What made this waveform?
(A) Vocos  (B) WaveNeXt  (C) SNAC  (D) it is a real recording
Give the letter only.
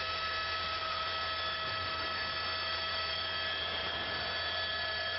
D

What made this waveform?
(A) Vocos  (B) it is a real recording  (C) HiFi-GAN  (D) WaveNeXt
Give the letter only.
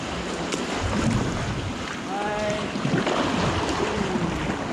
B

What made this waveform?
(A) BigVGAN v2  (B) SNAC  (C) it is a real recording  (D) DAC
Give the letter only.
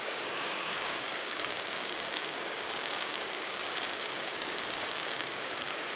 D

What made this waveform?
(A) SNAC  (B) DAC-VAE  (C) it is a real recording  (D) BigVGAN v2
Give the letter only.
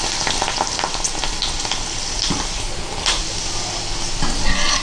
C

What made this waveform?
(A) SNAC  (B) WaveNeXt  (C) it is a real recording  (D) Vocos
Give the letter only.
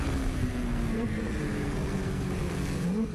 A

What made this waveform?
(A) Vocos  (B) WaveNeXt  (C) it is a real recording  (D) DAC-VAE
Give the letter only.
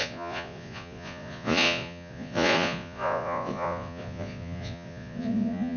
A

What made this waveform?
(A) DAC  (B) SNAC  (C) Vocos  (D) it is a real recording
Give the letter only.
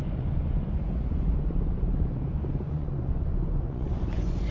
C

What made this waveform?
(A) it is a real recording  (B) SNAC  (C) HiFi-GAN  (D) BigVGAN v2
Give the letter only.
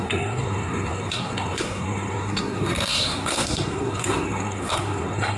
B